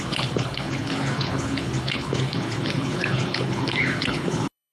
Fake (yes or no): yes